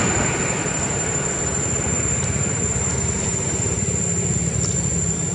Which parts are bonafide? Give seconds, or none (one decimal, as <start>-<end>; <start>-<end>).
0.0-0.6; 3.7-5.3